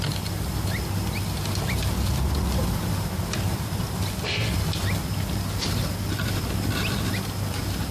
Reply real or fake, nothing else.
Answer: real